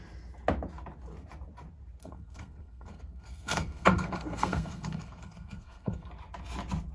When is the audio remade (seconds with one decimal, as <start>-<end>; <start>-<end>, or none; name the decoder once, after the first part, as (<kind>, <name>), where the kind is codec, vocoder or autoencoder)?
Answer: 2.0-6.1 (codec, SNAC)

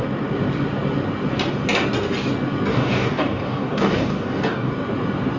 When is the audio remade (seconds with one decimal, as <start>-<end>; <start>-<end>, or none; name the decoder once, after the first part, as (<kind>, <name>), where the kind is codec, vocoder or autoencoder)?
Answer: 2.7-4.7 (codec, DAC)

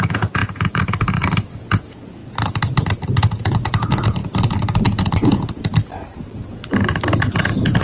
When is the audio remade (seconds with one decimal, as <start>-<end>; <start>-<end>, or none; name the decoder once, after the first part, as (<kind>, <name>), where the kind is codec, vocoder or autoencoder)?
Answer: 0.0-2.2 (vocoder, Vocos); 3.2-4.2; 4.8-5.7; 7.3-7.8

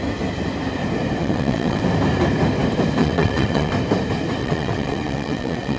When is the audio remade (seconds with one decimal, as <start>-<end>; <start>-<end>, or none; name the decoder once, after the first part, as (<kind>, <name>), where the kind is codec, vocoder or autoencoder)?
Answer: 1.2-1.8 (vocoder, WaveNeXt); 3.0-3.7; 4.4-5.8